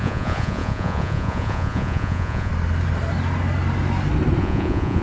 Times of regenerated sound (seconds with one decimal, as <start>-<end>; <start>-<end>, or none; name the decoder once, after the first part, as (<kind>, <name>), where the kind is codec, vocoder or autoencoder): 0.0-2.5 (vocoder, Vocos); 4.4-5.0